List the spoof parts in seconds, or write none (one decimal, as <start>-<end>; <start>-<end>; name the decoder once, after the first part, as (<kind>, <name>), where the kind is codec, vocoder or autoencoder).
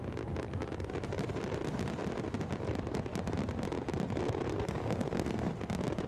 4.5-5.5 (codec, SNAC)